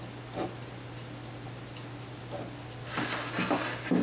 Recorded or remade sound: recorded